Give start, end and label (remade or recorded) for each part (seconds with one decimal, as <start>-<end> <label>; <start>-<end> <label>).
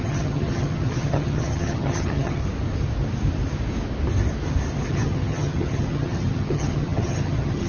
0.0-2.4 remade; 2.4-4.9 recorded; 4.9-7.7 remade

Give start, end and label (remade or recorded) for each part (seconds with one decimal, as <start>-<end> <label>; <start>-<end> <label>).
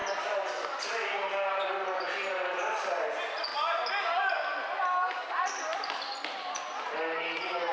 0.0-7.7 recorded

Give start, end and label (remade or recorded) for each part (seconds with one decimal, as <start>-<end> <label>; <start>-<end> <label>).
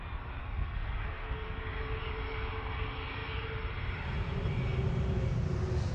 0.0-0.4 recorded; 0.4-1.6 remade; 1.6-5.9 recorded